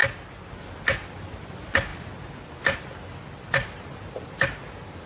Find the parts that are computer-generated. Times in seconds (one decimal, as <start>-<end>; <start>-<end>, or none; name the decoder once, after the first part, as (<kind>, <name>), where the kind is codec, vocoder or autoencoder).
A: none